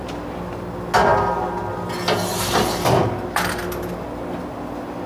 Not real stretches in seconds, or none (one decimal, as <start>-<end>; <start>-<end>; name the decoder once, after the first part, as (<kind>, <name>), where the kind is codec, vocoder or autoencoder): none